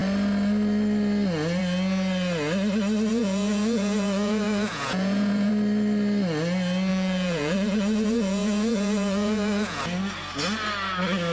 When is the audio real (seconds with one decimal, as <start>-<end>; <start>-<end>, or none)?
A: 0.0-3.1; 5.5-6.9; 9.8-11.3